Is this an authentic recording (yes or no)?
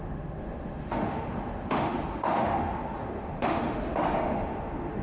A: no